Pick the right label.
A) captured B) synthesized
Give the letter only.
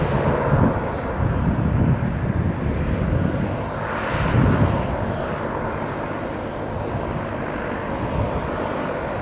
A